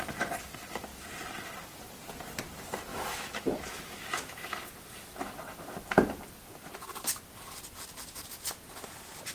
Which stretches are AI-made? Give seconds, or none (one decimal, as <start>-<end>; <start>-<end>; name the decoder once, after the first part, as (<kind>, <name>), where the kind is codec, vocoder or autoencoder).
2.9-4.4 (autoencoder, DAC-VAE)